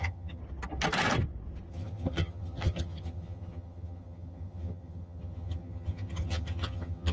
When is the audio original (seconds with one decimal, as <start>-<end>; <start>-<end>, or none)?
0.4-1.7